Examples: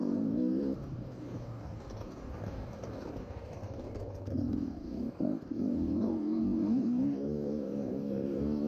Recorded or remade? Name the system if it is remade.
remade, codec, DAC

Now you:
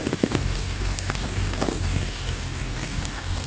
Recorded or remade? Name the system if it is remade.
remade, codec, DAC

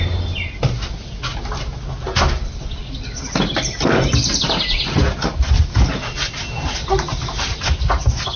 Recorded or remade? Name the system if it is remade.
recorded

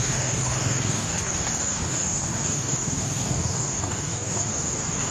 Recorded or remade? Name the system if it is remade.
remade, codec, DAC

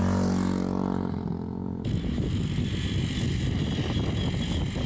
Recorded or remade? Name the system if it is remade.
recorded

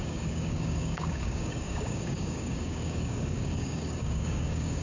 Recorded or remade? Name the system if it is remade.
remade, codec, DAC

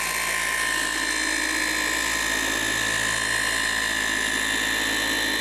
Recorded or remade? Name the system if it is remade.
recorded